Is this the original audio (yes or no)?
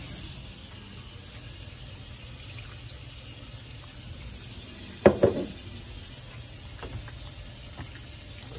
yes